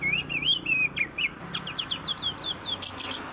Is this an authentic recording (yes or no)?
yes